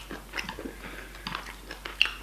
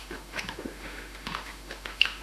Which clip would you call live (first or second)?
first